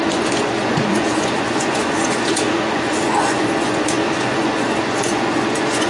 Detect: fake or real fake